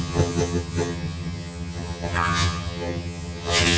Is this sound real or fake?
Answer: fake